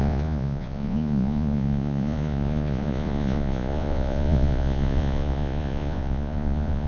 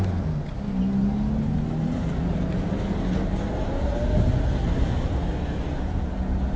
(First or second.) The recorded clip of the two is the second